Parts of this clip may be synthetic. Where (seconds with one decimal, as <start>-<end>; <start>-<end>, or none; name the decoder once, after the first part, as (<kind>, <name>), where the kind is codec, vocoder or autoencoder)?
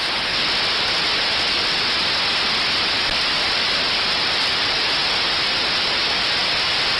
none